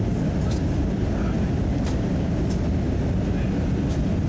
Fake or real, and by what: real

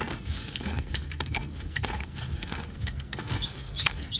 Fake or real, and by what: fake, codec, SNAC